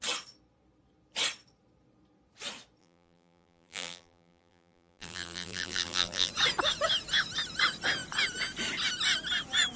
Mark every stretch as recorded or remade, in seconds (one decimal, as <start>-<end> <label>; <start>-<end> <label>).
0.0-2.8 recorded; 2.8-6.3 remade; 6.3-9.8 recorded